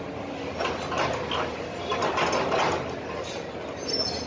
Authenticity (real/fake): real